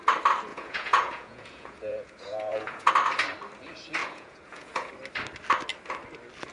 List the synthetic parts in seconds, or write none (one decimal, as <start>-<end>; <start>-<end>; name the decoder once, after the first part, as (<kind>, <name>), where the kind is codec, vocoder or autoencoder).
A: 0.5-2.9 (vocoder, Vocos); 4.0-4.9